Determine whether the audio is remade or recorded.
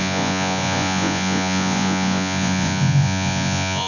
remade